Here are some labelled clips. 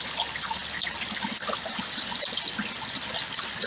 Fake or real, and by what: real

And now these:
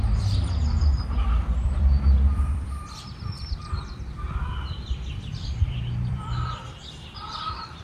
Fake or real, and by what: fake, vocoder, BigVGAN v2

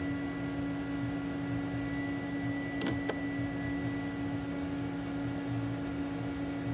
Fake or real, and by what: real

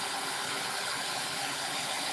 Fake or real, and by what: fake, codec, HILCodec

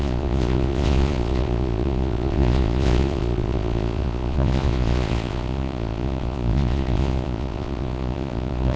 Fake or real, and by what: fake, vocoder, Vocos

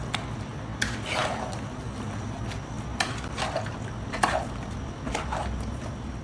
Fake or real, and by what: real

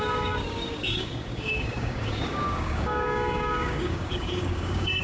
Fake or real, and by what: fake, codec, DAC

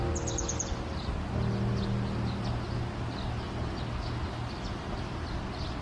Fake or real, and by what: real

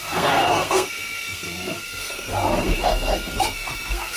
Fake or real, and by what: fake, codec, SNAC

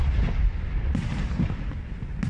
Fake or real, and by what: real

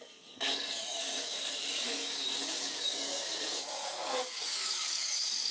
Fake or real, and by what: fake, codec, DAC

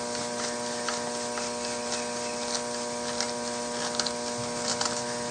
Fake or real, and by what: real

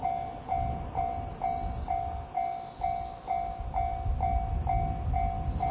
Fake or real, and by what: real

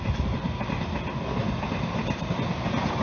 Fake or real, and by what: real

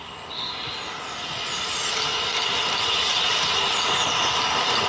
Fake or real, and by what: real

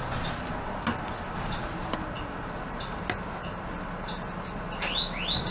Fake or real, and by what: real